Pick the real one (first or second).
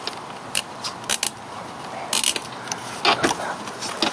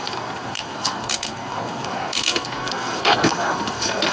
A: first